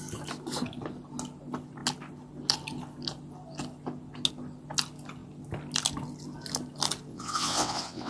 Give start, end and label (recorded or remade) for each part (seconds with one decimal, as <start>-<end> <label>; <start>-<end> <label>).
0.0-7.1 recorded; 7.1-8.1 remade